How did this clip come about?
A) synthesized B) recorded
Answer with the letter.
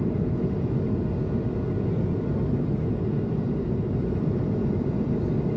B